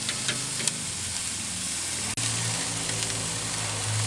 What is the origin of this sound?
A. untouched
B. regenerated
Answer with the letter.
A